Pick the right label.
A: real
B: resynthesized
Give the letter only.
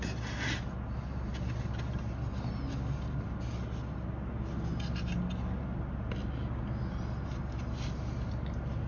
A